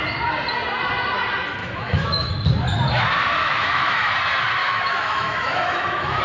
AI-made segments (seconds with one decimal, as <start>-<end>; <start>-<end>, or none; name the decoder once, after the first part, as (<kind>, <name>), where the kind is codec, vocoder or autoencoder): 1.6-2.3 (autoencoder, DAC-VAE); 3.4-4.1; 4.6-6.2